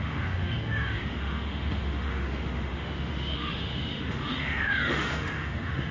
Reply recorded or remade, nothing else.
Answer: remade